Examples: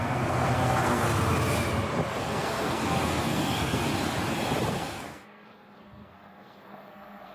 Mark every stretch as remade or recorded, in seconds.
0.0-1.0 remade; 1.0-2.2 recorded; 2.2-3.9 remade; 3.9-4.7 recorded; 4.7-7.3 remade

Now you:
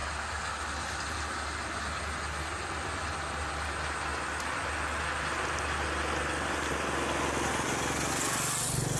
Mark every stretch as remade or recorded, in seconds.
0.0-9.0 recorded

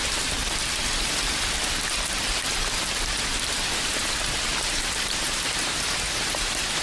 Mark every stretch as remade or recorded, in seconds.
0.0-0.4 remade; 0.4-3.2 recorded; 3.2-6.8 remade

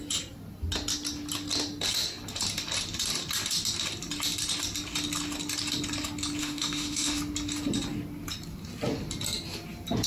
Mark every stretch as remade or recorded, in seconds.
0.0-6.4 recorded; 6.4-7.2 remade; 7.2-10.1 recorded

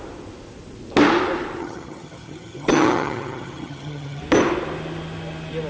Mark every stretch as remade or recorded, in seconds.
0.0-1.6 recorded; 1.6-4.2 remade; 4.2-5.7 recorded

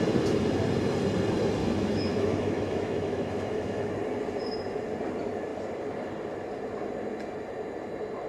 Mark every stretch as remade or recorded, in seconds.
0.0-1.6 recorded; 1.6-3.9 remade; 3.9-8.3 recorded

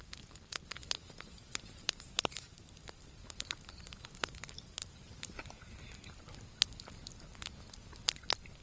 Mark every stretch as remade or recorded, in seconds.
0.0-0.8 recorded; 0.8-5.6 remade; 5.6-8.6 recorded